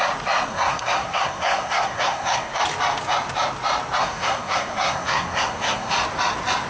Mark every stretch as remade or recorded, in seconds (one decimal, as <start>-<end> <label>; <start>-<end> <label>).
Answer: 0.0-0.5 recorded; 0.5-2.6 remade; 2.6-4.0 recorded; 4.0-5.9 remade; 5.9-6.7 recorded